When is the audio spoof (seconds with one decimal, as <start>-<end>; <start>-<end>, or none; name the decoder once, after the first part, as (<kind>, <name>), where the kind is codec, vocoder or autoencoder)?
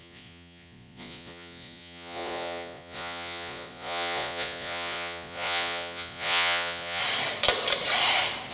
0.0-7.0 (vocoder, Vocos)